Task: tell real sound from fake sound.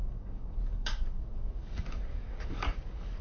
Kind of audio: fake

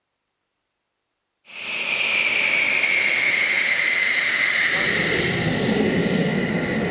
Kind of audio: real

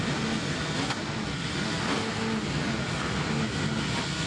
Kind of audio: real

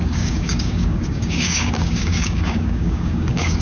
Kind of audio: fake